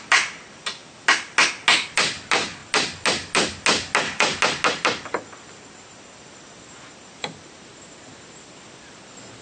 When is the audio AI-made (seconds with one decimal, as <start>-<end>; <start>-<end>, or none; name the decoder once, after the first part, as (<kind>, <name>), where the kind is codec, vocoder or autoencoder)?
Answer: none